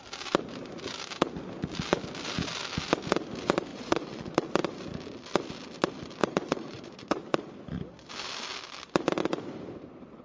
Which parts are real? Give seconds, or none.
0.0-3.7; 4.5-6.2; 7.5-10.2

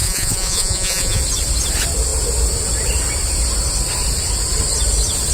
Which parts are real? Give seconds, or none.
1.2-5.3

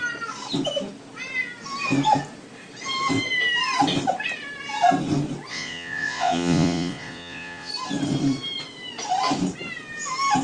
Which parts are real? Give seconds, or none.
0.0-5.5; 7.7-10.4

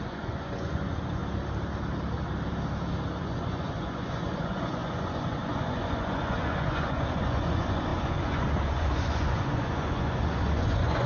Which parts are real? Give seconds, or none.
1.2-3.2

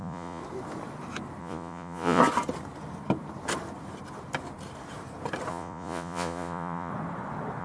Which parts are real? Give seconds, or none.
0.4-1.4; 2.2-5.5; 6.9-7.6

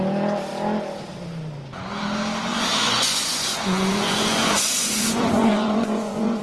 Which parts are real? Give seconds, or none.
0.0-2.5